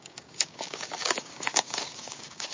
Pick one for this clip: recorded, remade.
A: remade